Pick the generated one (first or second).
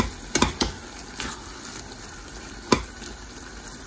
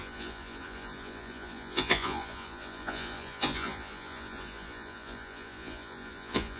second